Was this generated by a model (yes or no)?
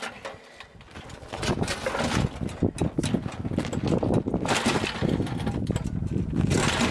no